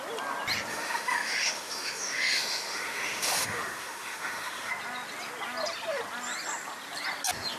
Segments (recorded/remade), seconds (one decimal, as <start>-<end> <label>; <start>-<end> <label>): 0.0-0.7 recorded; 0.7-4.7 remade; 4.7-7.6 recorded